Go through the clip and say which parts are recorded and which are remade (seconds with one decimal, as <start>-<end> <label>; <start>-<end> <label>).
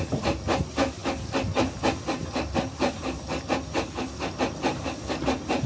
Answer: 0.0-5.7 recorded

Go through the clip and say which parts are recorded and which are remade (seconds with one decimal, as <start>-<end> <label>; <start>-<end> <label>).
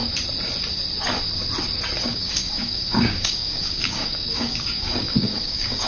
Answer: 0.0-2.1 recorded; 2.1-5.9 remade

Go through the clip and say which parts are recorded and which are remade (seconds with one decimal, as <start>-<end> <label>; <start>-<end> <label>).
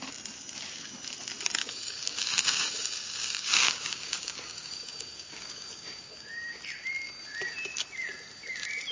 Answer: 0.0-1.6 recorded; 1.6-6.1 remade; 6.1-8.9 recorded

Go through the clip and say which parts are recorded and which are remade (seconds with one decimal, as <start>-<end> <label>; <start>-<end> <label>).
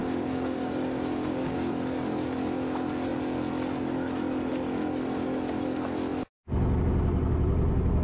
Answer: 0.0-1.7 remade; 1.7-8.0 recorded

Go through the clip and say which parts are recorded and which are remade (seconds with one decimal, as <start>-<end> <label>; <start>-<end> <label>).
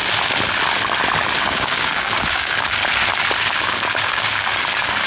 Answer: 0.0-1.4 recorded; 1.4-2.8 remade; 2.8-3.4 recorded; 3.4-5.1 remade